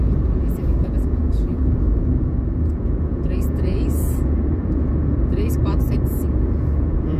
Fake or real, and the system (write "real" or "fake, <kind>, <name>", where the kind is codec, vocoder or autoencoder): fake, vocoder, Vocos